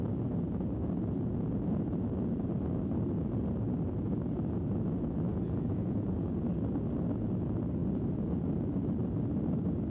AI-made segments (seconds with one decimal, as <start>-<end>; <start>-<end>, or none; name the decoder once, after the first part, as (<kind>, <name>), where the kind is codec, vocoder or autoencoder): 5.3-6.3 (vocoder, Vocos)